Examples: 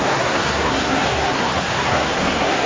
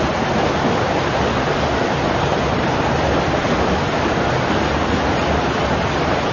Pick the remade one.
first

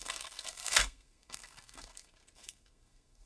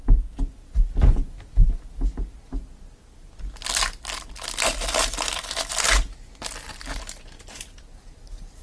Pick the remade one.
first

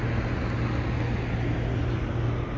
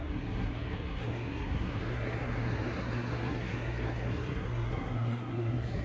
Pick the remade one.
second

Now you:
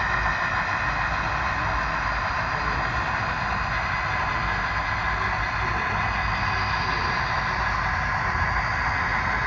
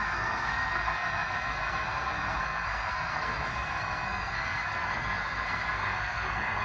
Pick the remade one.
second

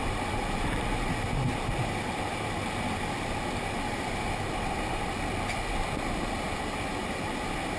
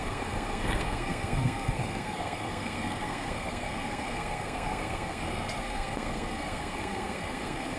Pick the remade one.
second